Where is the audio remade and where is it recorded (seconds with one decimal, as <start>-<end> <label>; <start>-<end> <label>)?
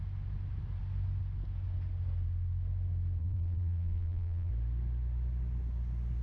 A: 0.0-3.2 recorded; 3.2-4.5 remade; 4.5-6.2 recorded